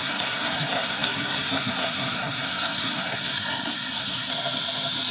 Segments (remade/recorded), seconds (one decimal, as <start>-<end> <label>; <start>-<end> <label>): 0.0-4.3 remade; 4.3-5.1 recorded